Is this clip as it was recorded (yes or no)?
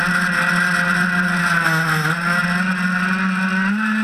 yes